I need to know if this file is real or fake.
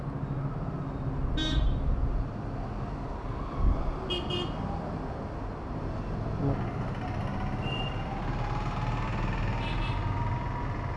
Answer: real